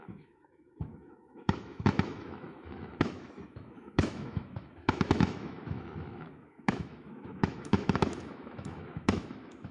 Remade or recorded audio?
remade